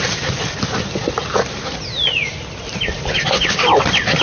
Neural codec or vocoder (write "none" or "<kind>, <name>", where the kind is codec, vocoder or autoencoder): none